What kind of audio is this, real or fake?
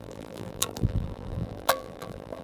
fake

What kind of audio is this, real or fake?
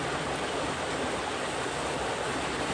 real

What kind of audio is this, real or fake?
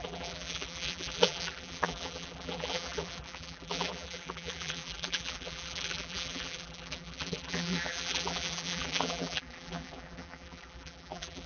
fake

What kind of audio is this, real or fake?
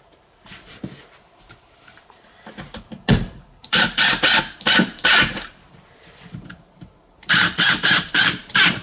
fake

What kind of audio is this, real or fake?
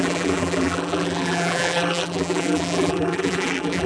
fake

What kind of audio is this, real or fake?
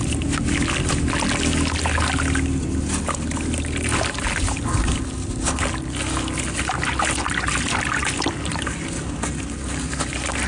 real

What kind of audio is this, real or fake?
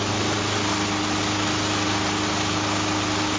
real